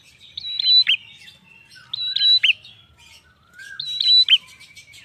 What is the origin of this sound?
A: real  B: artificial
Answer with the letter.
A